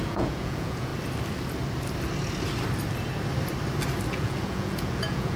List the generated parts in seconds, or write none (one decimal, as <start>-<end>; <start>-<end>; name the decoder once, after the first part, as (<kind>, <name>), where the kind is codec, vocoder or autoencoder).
0.0-0.9 (vocoder, Vocos); 4.1-5.4